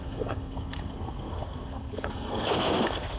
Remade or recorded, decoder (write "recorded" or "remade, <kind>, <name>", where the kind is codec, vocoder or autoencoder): remade, codec, SNAC